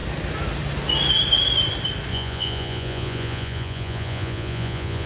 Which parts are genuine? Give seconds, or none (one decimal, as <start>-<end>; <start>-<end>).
0.0-2.1